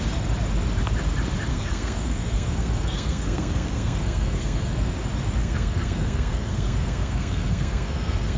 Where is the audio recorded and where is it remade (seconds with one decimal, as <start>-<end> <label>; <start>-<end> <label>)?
0.0-1.5 recorded; 1.5-4.9 remade; 4.9-5.4 recorded; 5.4-8.4 remade